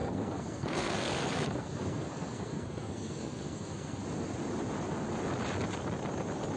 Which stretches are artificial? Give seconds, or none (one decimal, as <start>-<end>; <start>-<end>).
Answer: 0.0-4.0